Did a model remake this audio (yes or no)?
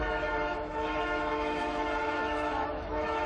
yes